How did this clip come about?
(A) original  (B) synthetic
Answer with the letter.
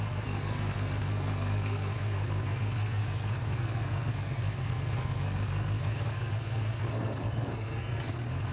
B